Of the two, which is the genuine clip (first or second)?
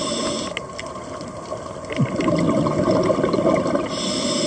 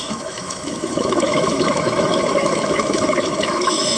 first